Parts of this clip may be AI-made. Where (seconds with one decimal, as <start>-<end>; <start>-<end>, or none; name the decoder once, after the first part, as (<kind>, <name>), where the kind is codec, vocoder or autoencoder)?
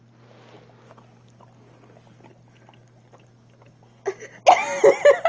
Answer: none